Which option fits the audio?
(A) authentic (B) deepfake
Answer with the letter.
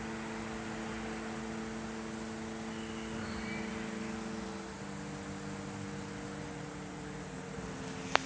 A